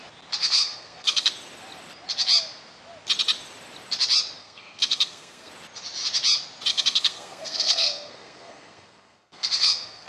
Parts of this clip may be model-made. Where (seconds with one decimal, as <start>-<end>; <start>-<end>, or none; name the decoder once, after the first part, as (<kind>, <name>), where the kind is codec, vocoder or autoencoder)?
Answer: 0.4-1.3 (codec, SNAC); 4.4-5.5; 6.7-10.1